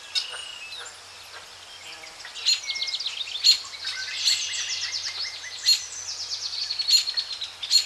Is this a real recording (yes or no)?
yes